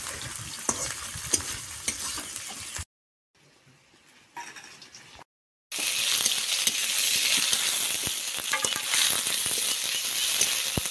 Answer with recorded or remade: recorded